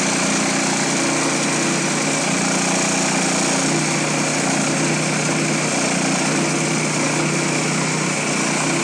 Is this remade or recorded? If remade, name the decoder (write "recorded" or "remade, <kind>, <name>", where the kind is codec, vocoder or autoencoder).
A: recorded